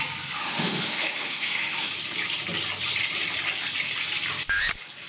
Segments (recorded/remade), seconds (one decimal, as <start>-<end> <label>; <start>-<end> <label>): 0.0-0.4 recorded; 0.4-1.9 remade; 1.9-5.1 recorded